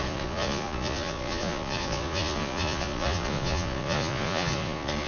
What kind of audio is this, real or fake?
fake